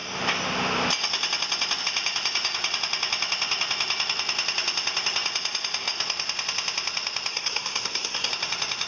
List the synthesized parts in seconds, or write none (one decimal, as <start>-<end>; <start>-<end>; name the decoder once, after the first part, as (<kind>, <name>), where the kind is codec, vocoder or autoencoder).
7.3-8.3 (codec, SNAC)